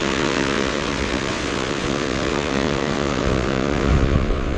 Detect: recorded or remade remade